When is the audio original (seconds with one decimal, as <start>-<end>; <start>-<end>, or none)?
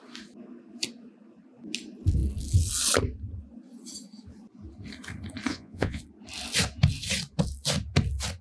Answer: 0.0-5.5; 6.0-8.4